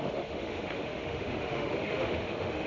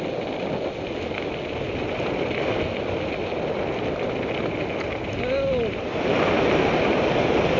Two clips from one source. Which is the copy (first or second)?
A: first